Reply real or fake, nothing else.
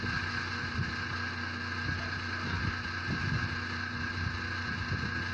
real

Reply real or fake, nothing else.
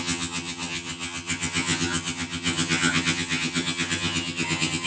fake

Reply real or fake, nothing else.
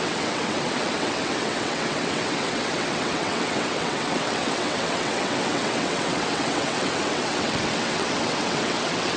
fake